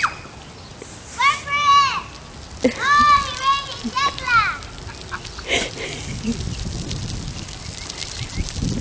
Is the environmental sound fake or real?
real